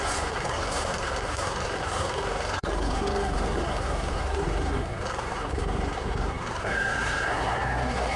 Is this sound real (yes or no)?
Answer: no